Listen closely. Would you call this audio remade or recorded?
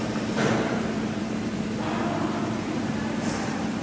recorded